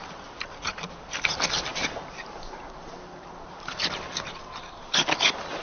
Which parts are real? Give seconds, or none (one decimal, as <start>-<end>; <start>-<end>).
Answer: 0.9-1.7; 4.0-5.6